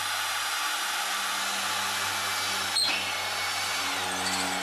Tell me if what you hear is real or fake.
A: real